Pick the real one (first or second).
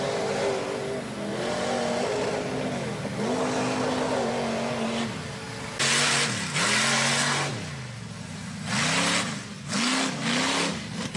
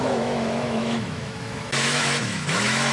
first